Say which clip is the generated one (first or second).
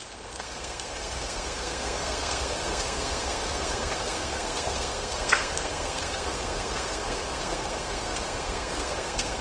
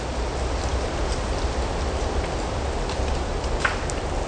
first